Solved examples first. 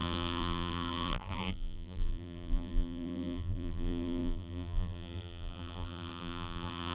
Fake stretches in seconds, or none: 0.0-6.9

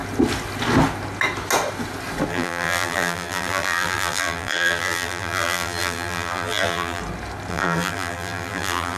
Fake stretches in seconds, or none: 2.3-7.0; 7.5-9.0

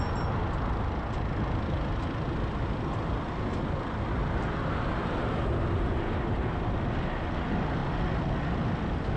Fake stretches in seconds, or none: none

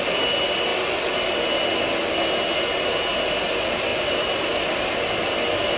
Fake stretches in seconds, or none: 3.9-4.8

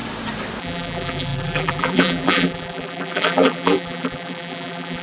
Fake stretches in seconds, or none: 0.6-5.0

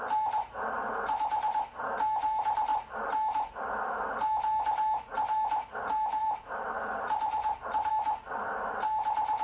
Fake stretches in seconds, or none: 6.2-7.9

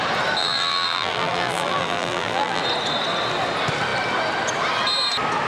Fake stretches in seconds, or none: 0.4-2.6